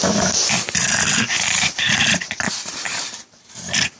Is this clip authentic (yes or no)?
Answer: yes